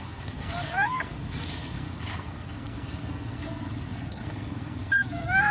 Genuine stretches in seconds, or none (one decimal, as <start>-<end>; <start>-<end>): none